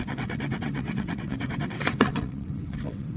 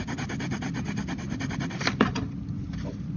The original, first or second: second